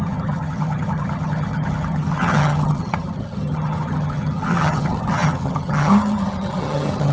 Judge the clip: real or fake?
fake